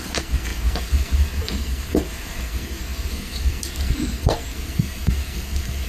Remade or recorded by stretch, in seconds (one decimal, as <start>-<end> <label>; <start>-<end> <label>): 0.0-5.9 remade